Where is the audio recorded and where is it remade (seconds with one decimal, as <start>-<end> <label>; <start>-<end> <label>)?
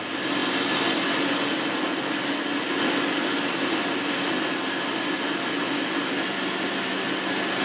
0.0-7.6 recorded